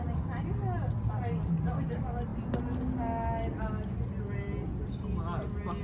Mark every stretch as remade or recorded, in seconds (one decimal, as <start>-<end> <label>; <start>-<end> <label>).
0.0-5.8 recorded